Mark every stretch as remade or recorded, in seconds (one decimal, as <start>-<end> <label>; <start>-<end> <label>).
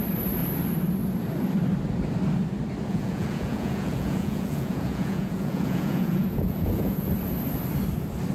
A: 0.0-2.9 recorded; 2.9-7.1 remade; 7.1-8.3 recorded